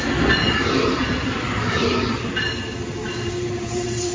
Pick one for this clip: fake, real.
real